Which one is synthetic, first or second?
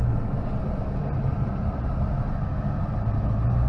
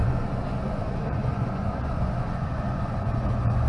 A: second